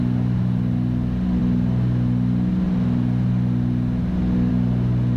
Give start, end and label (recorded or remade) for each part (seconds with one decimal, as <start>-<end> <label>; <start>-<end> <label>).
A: 0.0-5.2 recorded